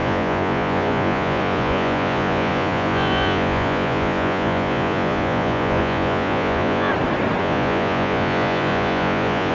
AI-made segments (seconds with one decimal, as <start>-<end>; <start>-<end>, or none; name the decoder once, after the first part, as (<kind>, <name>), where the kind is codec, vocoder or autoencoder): 0.0-6.9 (vocoder, Vocos); 7.4-9.5